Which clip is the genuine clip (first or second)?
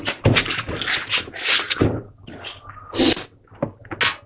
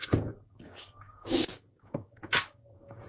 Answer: first